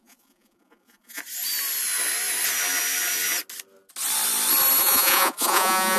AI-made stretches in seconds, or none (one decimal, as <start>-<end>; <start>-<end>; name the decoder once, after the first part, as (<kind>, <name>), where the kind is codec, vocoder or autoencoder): 0.0-1.2 (vocoder, Vocos); 4.8-6.0